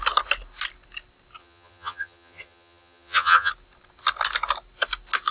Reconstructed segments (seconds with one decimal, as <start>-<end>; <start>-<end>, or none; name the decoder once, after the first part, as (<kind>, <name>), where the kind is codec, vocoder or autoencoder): 1.4-3.5 (vocoder, HiFi-GAN)